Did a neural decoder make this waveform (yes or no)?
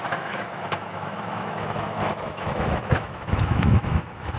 yes